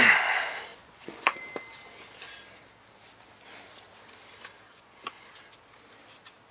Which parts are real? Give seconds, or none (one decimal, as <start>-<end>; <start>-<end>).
0.0-0.7; 1.4-4.7; 5.3-6.5